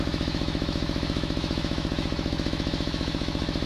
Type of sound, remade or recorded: remade